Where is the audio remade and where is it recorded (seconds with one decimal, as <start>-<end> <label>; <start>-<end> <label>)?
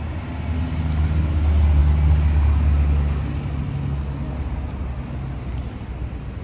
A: 0.0-6.4 recorded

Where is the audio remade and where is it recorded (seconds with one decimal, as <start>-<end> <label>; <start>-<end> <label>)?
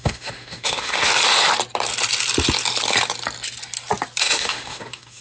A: 0.0-1.1 remade; 1.1-4.2 recorded; 4.2-5.2 remade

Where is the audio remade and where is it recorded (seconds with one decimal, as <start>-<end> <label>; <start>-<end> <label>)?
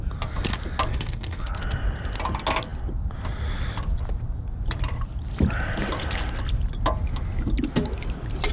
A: 0.0-0.9 recorded; 0.9-1.6 remade; 1.6-8.5 recorded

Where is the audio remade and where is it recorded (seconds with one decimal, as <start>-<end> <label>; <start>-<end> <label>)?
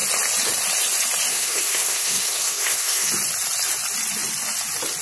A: 0.0-1.3 recorded; 1.3-3.1 remade; 3.1-5.0 recorded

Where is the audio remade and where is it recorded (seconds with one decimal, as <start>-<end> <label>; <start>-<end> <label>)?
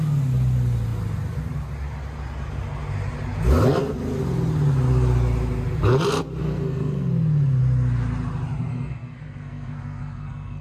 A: 0.0-6.4 recorded; 6.4-7.1 remade; 7.1-8.7 recorded; 8.7-10.6 remade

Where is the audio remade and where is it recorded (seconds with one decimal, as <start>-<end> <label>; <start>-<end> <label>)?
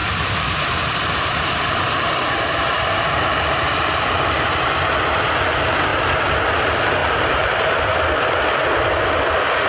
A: 0.0-4.7 remade; 4.7-7.0 recorded; 7.0-7.8 remade; 7.8-9.7 recorded